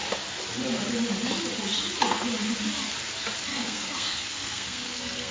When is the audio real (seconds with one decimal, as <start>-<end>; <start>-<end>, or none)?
0.0-3.5